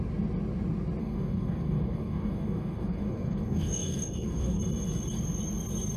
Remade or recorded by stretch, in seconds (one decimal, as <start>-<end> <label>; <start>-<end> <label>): 0.0-1.0 recorded; 1.0-4.6 remade; 4.6-6.0 recorded